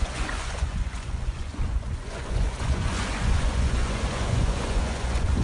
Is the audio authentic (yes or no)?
no